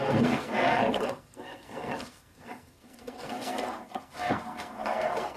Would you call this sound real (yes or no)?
no